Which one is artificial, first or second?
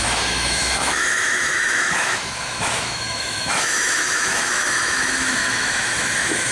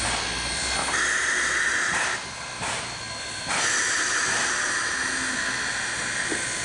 first